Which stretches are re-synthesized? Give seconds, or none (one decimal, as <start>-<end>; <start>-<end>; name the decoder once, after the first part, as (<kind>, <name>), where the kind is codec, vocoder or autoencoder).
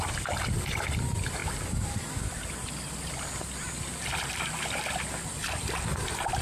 none